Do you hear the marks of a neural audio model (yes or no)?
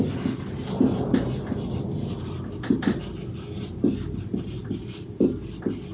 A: no